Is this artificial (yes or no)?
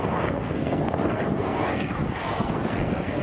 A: yes